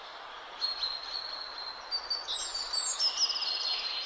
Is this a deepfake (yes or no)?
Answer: no